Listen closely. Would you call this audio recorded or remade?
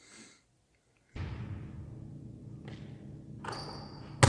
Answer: recorded